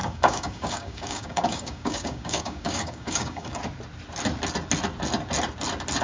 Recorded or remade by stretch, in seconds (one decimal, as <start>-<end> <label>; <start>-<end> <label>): 0.0-3.6 remade; 3.6-6.0 recorded

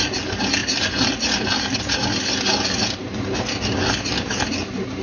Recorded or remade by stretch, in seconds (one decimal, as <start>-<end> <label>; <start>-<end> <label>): 0.0-5.0 recorded

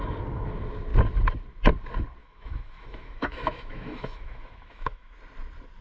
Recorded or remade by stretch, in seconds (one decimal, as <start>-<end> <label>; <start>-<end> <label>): 0.0-2.2 recorded; 2.2-5.2 remade; 5.2-5.8 recorded

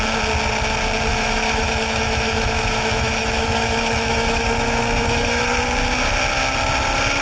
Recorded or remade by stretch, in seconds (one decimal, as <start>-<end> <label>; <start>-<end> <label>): 0.0-1.1 recorded; 1.1-5.4 remade; 5.4-7.2 recorded

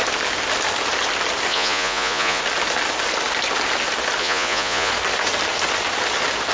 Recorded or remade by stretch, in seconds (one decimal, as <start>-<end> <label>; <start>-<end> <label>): 0.0-1.5 recorded; 1.5-2.4 remade; 2.4-4.2 recorded; 4.2-4.9 remade; 4.9-6.5 recorded

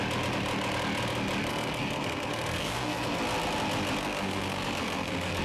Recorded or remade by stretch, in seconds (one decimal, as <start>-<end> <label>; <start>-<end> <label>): 0.0-1.5 recorded; 1.5-3.2 remade; 3.2-4.0 recorded; 4.0-5.4 remade

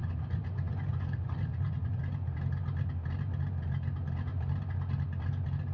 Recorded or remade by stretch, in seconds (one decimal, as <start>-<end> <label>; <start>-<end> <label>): 0.0-2.0 remade; 2.0-5.7 recorded

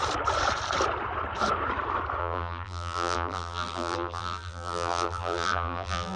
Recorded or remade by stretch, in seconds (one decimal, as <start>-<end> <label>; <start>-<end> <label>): 0.0-2.2 recorded; 2.2-6.2 remade